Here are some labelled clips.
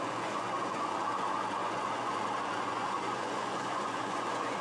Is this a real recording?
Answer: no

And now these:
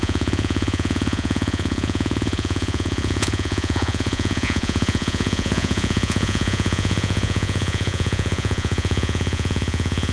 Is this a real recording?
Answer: no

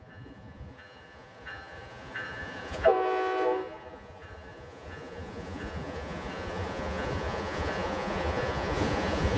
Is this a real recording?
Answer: no